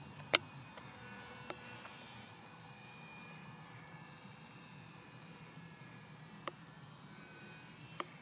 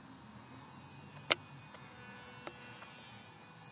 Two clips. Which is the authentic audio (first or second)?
second